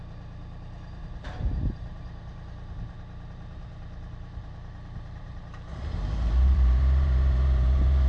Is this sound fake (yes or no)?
yes